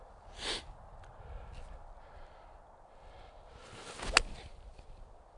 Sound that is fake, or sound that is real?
real